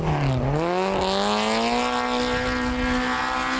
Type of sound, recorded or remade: recorded